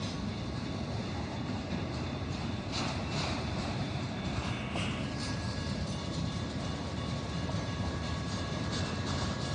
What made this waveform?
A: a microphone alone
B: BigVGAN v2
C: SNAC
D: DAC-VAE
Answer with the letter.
B